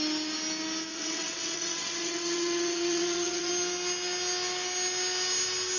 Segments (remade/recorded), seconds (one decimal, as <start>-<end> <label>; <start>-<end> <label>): 0.0-0.9 recorded; 0.9-3.5 remade; 3.5-5.8 recorded